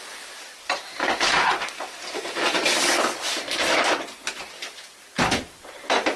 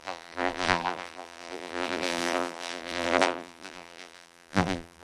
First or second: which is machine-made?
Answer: second